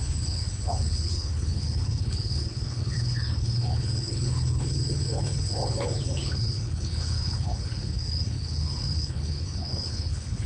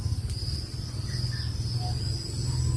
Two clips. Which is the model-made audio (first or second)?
first